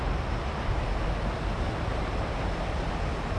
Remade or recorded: recorded